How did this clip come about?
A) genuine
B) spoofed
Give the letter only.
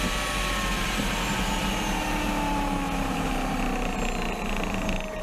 A